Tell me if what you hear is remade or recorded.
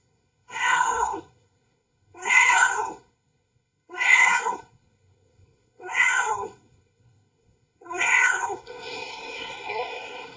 remade